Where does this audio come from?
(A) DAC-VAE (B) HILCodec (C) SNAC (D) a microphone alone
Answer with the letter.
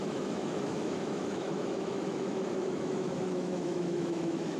A